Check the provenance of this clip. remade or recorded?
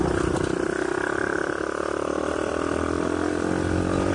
recorded